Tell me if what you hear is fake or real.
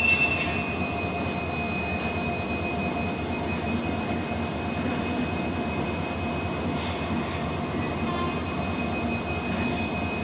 real